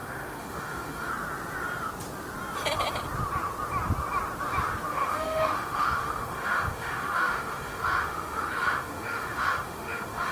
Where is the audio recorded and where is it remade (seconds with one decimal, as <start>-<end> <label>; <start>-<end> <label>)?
0.0-1.1 remade; 1.1-4.9 recorded; 4.9-10.3 remade